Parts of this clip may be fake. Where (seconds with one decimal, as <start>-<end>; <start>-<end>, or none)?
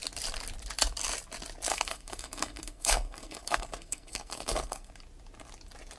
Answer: 1.7-4.9